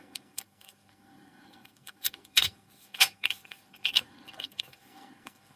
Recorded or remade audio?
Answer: remade